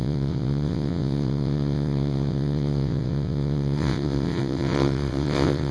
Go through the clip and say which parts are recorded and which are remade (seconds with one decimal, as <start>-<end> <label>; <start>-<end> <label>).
0.0-5.7 remade